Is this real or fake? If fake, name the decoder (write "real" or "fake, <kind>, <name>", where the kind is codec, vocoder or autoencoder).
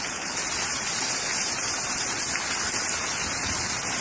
real